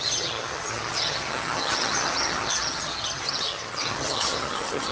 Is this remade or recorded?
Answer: remade